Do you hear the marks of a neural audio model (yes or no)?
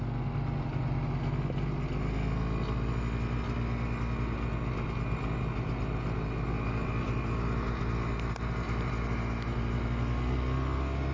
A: no